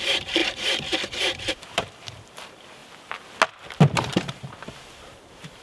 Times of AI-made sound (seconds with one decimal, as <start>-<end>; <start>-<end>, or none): 0.0-2.8; 4.0-5.6